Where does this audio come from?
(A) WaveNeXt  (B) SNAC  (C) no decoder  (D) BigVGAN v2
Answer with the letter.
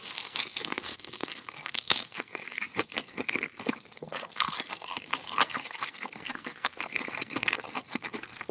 B